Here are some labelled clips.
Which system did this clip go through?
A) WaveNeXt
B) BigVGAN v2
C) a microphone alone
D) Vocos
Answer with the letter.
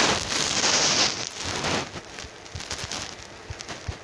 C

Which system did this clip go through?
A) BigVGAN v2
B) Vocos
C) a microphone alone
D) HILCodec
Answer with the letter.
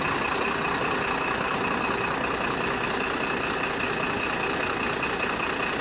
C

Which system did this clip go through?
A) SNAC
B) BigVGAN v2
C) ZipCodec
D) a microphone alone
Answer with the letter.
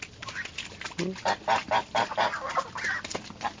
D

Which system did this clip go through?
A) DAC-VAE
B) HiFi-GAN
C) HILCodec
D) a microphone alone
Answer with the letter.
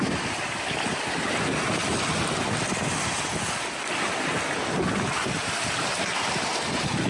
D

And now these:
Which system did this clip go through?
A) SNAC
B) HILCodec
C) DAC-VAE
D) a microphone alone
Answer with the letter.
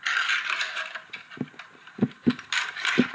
D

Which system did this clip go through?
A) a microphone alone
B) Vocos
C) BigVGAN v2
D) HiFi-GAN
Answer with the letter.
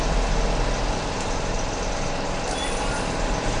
C